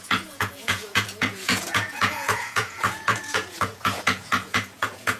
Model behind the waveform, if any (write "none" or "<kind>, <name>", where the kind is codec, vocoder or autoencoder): vocoder, Vocos